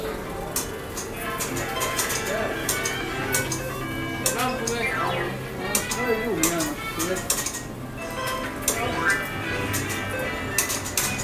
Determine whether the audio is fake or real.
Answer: real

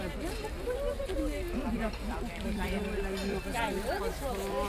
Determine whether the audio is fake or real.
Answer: fake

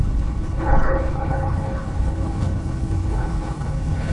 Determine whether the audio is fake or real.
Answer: fake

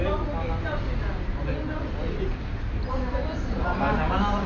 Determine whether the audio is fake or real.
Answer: real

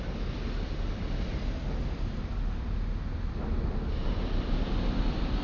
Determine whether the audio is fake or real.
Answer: real